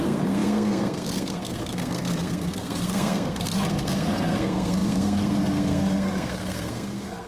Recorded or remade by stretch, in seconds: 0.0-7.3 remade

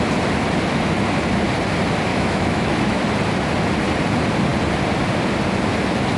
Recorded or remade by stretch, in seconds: 0.0-2.1 recorded; 2.1-3.0 remade; 3.0-6.2 recorded